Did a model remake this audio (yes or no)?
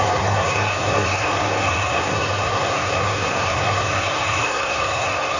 yes